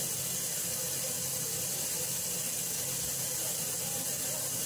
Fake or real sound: real